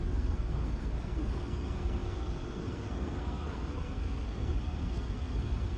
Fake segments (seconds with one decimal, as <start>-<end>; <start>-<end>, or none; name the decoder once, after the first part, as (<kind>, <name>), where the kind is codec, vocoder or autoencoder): 0.0-5.8 (codec, SNAC)